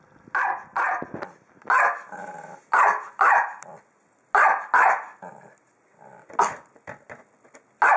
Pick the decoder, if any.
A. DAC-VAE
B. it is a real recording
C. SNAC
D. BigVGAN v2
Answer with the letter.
B